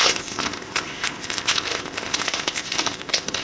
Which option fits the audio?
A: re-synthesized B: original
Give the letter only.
A